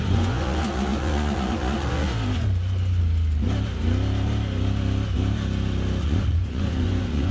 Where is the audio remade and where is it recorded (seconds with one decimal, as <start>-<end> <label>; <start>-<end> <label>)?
0.0-2.1 remade; 2.1-6.0 recorded; 6.0-7.3 remade

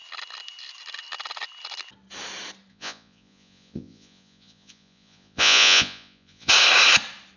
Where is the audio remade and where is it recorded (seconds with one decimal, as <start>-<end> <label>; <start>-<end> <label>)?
0.0-2.7 recorded; 2.7-6.5 remade; 6.5-7.4 recorded

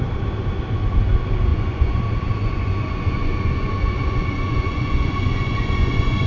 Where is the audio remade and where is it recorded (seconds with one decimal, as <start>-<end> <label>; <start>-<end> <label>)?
0.0-1.5 recorded; 1.5-2.0 remade; 2.0-2.4 recorded; 2.4-6.3 remade

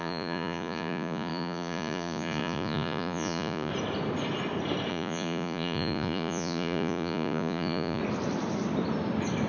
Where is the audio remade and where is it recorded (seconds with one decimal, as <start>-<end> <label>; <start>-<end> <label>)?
0.0-3.7 remade; 3.7-4.9 recorded; 4.9-8.0 remade; 8.0-9.5 recorded

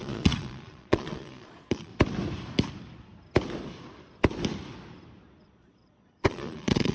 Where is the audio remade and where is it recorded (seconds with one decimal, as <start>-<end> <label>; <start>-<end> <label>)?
0.0-1.9 remade; 1.9-5.4 recorded; 5.4-6.9 remade

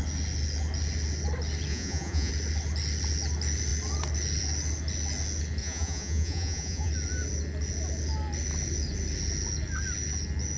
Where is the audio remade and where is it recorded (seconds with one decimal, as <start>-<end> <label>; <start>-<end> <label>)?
0.0-1.7 recorded; 1.7-2.3 remade; 2.3-5.6 recorded; 5.6-6.9 remade; 6.9-10.6 recorded

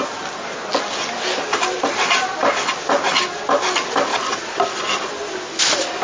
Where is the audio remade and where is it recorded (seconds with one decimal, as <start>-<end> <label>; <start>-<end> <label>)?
0.0-6.0 recorded